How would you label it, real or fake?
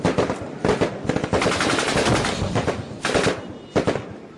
real